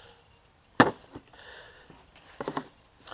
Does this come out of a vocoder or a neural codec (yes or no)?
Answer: no